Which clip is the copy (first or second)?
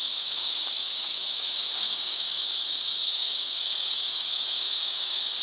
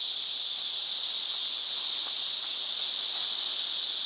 first